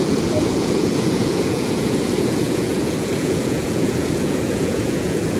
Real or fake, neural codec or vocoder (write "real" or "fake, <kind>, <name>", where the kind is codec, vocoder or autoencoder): fake, vocoder, Vocos